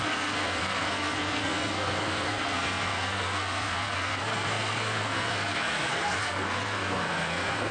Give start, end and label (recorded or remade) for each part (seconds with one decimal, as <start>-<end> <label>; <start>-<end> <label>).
0.0-7.7 remade